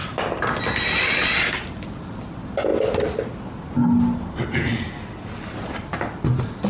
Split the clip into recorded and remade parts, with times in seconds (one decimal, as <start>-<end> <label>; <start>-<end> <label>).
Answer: 0.0-6.7 recorded